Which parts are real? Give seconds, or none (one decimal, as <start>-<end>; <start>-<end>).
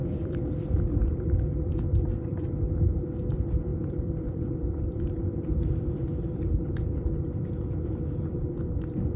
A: 1.8-3.7; 7.5-9.2